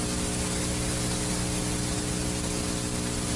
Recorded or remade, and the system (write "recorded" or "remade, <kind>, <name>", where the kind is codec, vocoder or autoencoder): recorded